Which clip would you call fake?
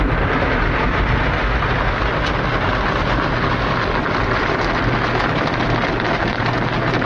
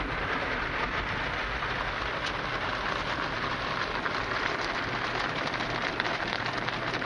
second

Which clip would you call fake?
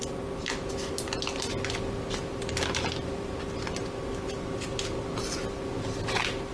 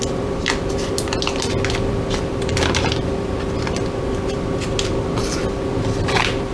second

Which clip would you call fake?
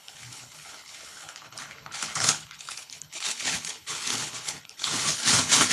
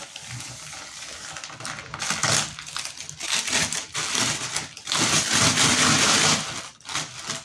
first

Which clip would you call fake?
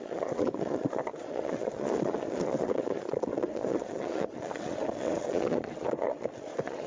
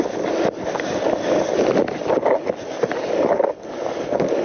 first